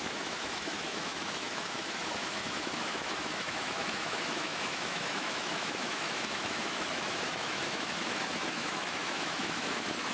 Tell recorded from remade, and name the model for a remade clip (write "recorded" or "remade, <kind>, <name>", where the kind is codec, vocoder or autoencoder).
remade, autoencoder, DAC-VAE